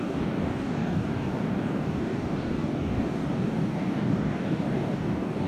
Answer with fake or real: fake